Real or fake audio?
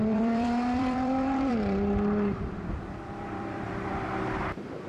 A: fake